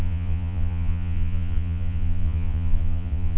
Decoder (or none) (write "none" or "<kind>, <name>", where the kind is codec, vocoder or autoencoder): vocoder, Vocos